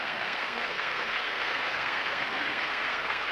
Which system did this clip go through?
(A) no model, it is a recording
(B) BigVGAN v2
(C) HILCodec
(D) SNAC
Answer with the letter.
D